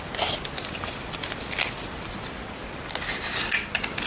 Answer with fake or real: real